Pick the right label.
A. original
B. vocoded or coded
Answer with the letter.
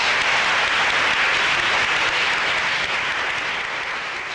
A